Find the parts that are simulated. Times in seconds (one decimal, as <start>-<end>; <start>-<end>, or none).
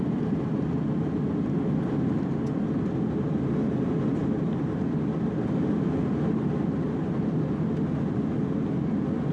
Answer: none